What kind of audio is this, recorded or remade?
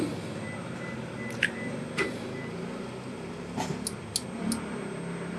recorded